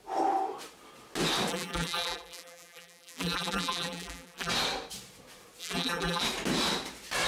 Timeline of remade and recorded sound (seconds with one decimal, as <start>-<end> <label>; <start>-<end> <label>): 0.0-1.5 recorded; 1.5-4.5 remade; 4.5-5.6 recorded; 5.6-6.2 remade; 6.2-7.3 recorded